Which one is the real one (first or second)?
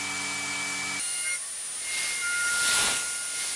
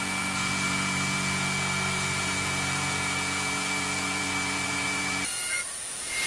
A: first